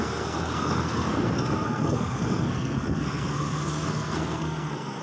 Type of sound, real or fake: fake